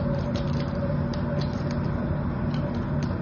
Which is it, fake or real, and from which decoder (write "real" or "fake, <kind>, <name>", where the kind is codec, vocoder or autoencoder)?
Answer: real